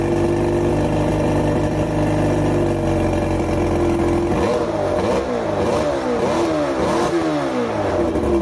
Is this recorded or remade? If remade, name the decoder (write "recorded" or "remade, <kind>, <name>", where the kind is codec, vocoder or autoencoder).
recorded